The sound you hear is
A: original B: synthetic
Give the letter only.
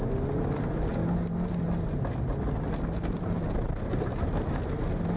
A